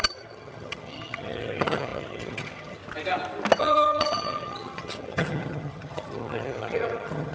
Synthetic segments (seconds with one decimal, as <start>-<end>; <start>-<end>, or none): 0.0-2.8; 3.6-7.3